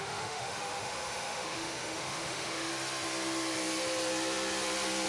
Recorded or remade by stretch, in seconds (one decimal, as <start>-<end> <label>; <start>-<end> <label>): 0.0-2.7 remade; 2.7-5.1 recorded